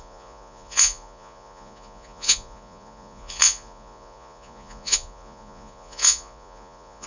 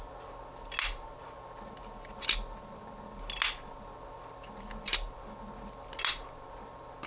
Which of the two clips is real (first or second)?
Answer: second